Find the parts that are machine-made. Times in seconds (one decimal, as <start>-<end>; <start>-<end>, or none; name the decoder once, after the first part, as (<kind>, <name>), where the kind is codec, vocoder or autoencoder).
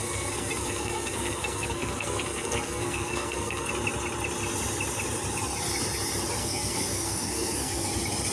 0.0-3.7 (codec, SNAC); 6.4-7.9